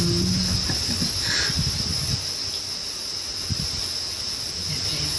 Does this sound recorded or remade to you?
recorded